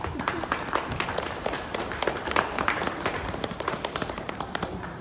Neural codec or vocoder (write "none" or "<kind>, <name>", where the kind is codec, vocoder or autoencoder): vocoder, BigVGAN v2